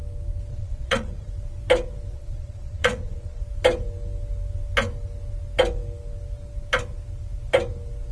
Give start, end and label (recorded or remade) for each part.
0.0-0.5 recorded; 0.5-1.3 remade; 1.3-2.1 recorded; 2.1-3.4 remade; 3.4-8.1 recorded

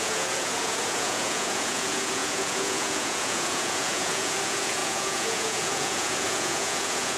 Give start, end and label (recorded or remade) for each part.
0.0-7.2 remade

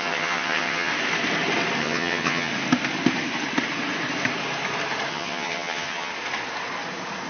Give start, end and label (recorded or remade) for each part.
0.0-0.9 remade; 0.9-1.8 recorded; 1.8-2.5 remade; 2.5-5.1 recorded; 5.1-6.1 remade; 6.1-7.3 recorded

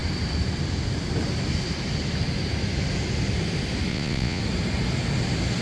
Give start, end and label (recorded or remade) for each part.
0.0-3.9 recorded; 3.9-4.4 remade; 4.4-5.6 recorded

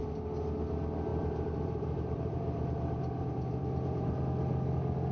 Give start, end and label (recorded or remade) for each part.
0.0-1.1 recorded; 1.1-4.2 remade; 4.2-5.1 recorded

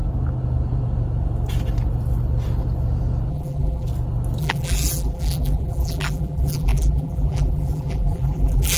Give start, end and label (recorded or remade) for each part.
0.0-3.3 recorded; 3.3-3.9 remade; 3.9-4.4 recorded; 4.4-8.8 remade

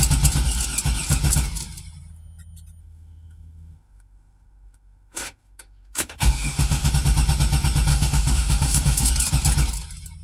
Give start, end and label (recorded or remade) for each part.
0.0-2.8 recorded; 2.8-6.9 remade; 6.9-7.9 recorded; 7.9-9.1 remade; 9.1-10.2 recorded